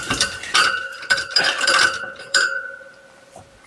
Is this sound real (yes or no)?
no